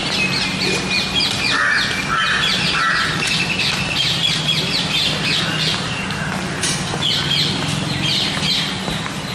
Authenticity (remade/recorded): recorded